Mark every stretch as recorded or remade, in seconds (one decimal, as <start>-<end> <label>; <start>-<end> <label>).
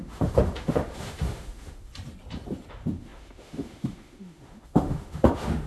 0.0-1.9 remade; 1.9-2.7 recorded; 2.7-5.7 remade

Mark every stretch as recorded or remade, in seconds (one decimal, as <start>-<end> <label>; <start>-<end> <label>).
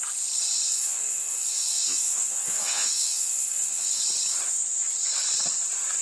0.0-0.7 recorded; 0.7-4.0 remade; 4.0-6.0 recorded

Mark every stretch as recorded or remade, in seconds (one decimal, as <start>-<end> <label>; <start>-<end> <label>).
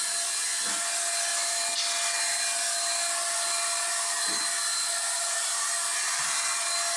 0.0-7.0 recorded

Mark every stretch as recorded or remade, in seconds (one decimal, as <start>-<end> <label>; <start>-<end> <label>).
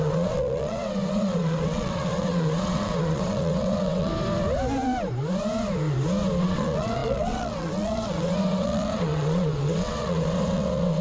0.0-4.1 remade; 4.1-6.4 recorded; 6.4-11.0 remade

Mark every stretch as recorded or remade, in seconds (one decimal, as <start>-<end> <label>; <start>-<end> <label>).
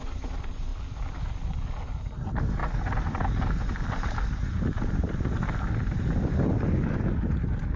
0.0-7.8 recorded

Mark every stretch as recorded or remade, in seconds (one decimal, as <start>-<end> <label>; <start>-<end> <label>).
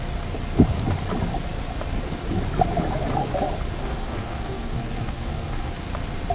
0.0-3.8 recorded; 3.8-5.7 remade; 5.7-6.3 recorded